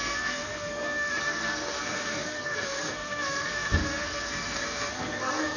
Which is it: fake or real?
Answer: fake